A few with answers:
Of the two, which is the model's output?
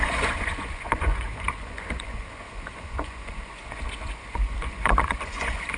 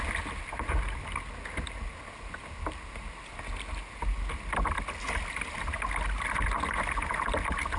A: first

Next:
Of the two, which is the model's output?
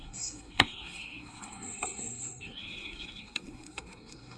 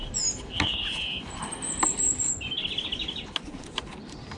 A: first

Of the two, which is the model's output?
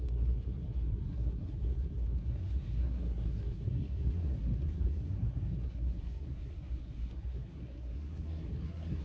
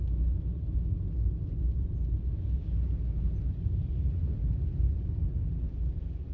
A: first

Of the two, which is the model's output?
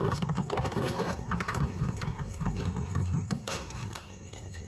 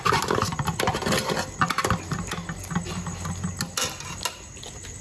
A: first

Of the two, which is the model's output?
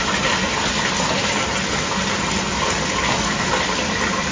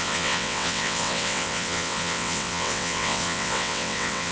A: second